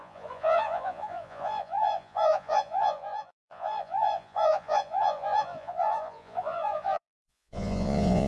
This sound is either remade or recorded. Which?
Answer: remade